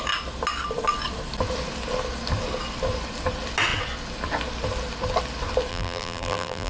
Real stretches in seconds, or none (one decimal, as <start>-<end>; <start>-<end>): 0.0-5.7